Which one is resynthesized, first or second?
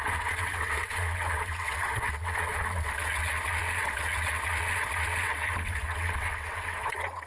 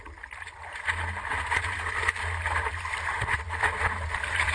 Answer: first